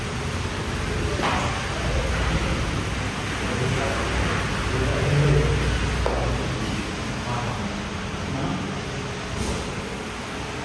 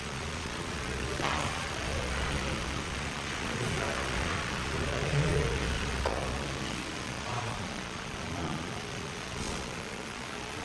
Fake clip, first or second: second